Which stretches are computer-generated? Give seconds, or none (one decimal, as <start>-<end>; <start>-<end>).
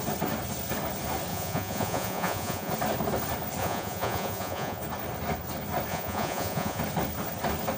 1.3-2.7; 3.6-4.8; 5.9-6.8